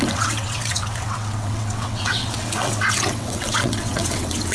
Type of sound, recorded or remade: remade